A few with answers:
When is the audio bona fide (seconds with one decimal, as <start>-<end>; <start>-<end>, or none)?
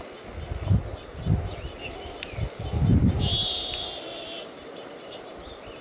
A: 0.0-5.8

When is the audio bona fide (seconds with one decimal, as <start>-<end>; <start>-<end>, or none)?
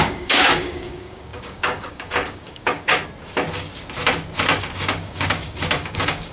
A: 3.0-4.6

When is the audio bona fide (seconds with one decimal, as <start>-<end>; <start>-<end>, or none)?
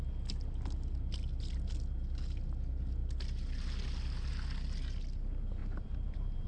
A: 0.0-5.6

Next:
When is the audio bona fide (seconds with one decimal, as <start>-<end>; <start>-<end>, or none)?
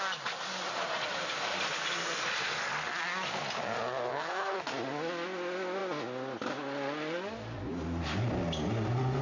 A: 0.0-4.1; 4.6-9.2